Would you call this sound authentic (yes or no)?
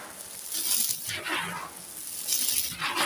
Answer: yes